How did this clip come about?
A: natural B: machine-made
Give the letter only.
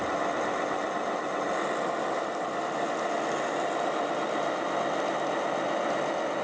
A